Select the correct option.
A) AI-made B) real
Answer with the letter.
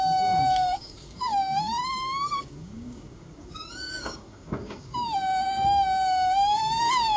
A